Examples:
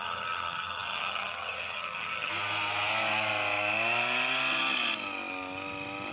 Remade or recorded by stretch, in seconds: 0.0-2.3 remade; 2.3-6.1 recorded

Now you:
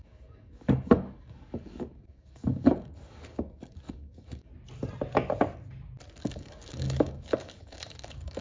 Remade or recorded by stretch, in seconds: 0.0-4.5 remade; 4.5-6.2 recorded; 6.2-8.4 remade

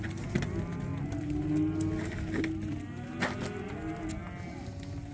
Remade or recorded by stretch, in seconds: 0.0-5.1 recorded

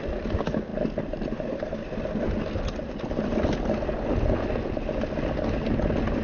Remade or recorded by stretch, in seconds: 0.0-6.2 recorded

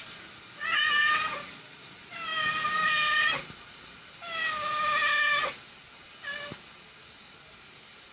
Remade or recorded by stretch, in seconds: 0.0-8.1 recorded

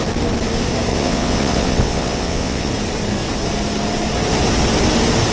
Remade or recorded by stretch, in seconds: 0.0-0.9 recorded; 0.9-2.7 remade; 2.7-5.3 recorded

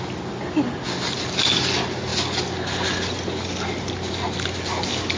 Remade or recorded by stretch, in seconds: 0.0-5.2 recorded